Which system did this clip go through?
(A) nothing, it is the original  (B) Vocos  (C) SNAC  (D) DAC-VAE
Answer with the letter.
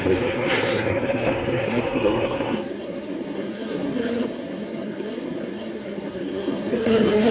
C